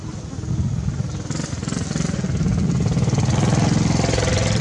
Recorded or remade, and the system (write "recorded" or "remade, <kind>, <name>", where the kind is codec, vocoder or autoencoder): recorded